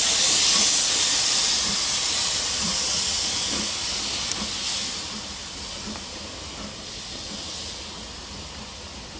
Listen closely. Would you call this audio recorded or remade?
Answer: recorded